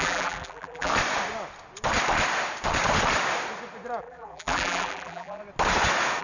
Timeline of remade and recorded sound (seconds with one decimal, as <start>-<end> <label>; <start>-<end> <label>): 0.0-0.9 remade; 0.9-4.0 recorded; 4.0-5.4 remade; 5.4-6.2 recorded